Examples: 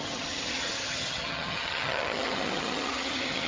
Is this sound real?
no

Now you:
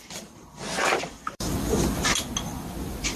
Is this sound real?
no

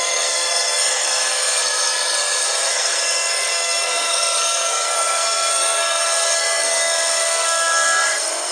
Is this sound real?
no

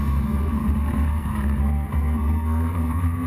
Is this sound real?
no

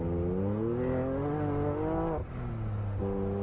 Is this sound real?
yes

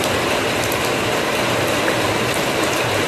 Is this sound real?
yes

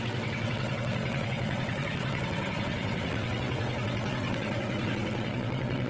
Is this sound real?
no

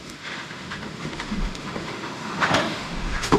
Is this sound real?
no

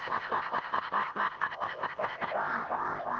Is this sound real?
no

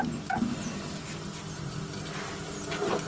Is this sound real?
yes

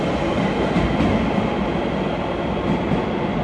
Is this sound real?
yes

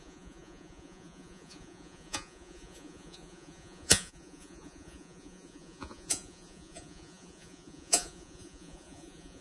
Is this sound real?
no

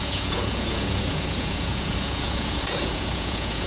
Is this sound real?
no